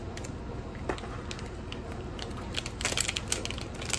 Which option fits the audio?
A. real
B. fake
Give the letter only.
A